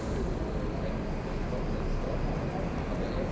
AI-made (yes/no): no